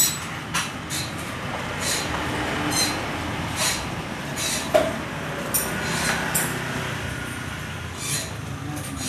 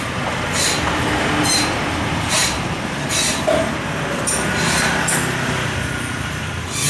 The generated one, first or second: second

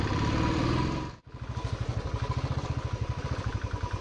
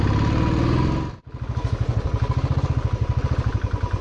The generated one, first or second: first